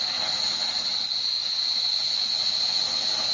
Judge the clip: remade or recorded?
recorded